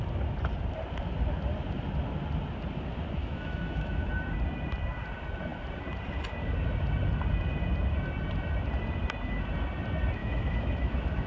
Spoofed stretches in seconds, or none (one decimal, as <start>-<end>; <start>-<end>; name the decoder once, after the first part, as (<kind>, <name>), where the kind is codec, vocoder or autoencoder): 3.2-4.1 (autoencoder, DAC-VAE); 10.2-11.3